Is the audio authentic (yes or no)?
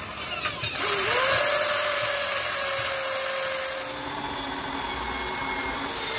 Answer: yes